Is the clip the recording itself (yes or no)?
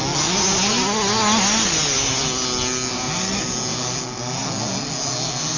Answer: yes